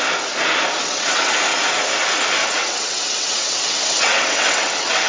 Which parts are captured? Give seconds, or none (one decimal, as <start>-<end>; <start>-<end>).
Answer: 0.0-0.8; 1.3-2.4